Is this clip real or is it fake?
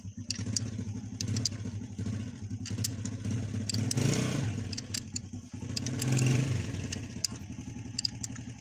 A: real